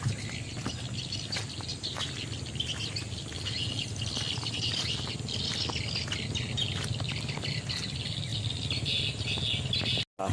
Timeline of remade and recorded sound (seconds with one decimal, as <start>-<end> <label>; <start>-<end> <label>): 0.0-10.3 recorded